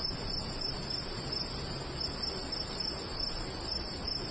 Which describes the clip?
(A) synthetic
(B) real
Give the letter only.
B